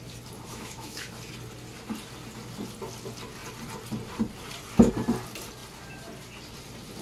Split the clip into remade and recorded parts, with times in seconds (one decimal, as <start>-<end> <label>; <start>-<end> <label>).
0.0-0.5 recorded; 0.5-1.1 remade; 1.1-7.0 recorded

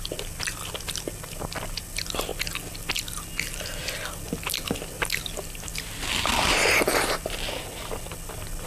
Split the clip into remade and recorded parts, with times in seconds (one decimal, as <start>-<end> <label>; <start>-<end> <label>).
0.0-8.7 recorded

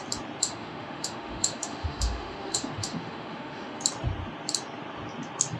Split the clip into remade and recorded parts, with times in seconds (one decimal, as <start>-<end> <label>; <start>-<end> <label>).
0.0-0.4 recorded; 0.4-3.8 remade; 3.8-5.6 recorded

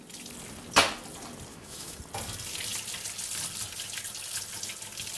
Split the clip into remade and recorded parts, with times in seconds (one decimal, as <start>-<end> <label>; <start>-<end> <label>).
0.0-1.5 recorded; 1.5-2.0 remade; 2.0-5.2 recorded